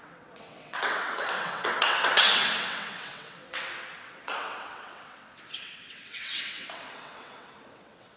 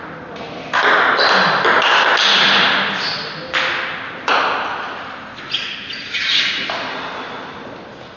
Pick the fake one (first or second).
first